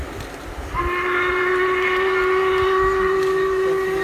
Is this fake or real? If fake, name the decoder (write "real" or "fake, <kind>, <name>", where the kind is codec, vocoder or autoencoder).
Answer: real